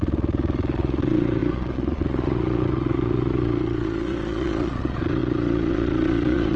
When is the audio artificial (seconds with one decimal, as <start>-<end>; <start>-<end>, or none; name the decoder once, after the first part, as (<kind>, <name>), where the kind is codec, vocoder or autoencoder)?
0.0-6.6 (vocoder, Vocos)